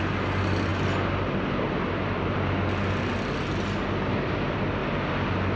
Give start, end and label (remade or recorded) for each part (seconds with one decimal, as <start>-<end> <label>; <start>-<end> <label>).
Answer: 0.0-5.6 recorded

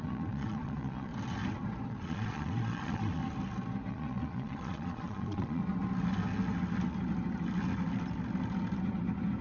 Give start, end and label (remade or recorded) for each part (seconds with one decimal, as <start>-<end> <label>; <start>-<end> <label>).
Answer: 0.0-1.1 remade; 1.1-1.9 recorded; 1.9-3.2 remade; 3.2-3.9 recorded; 3.9-5.6 remade; 5.6-9.4 recorded

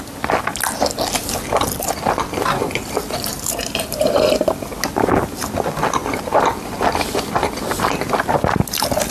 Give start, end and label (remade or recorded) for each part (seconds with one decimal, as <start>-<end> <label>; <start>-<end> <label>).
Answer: 0.0-3.3 recorded; 3.3-4.5 remade; 4.5-9.1 recorded

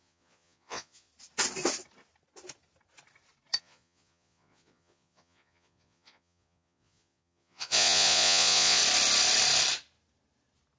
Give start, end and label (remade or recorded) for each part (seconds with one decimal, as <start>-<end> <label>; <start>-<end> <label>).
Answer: 0.0-1.1 remade; 1.1-3.6 recorded; 3.6-8.8 remade; 8.8-10.8 recorded

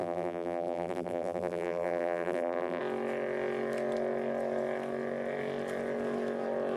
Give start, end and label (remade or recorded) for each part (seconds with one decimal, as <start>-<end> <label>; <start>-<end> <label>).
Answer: 0.0-2.8 remade; 2.8-6.8 recorded

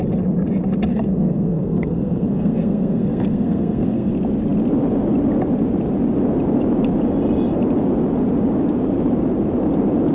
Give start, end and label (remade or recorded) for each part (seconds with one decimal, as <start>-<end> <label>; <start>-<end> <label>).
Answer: 0.0-0.9 recorded; 0.9-4.1 remade; 4.1-10.1 recorded

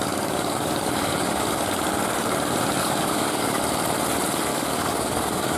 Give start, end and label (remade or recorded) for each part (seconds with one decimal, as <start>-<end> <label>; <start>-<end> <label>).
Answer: 0.0-1.6 remade; 1.6-2.8 recorded; 2.8-3.6 remade; 3.6-4.5 recorded; 4.5-5.6 remade